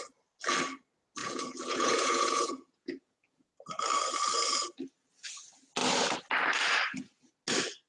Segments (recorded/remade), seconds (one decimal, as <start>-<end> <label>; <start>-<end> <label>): 0.0-1.2 recorded; 1.2-3.5 remade; 3.5-7.9 recorded